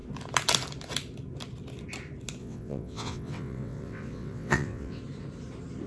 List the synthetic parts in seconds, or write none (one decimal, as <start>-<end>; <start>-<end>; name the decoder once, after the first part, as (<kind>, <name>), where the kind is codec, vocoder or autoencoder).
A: 2.4-5.0 (vocoder, WaveNeXt)